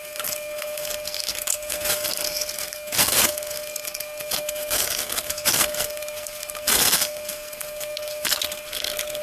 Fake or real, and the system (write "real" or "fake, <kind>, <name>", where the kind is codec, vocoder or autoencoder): fake, codec, SNAC